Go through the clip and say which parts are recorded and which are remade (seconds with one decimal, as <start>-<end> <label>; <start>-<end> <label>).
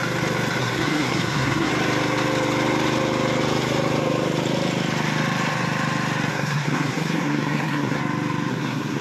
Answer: 0.0-0.6 recorded; 0.6-1.7 remade; 1.7-6.3 recorded; 6.3-8.0 remade; 8.0-8.5 recorded; 8.5-9.0 remade